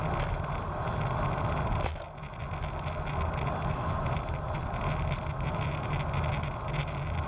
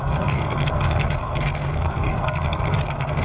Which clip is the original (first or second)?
first